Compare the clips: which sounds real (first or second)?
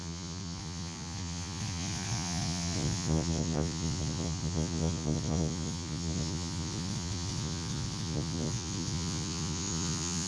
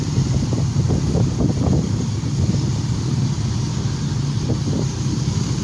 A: second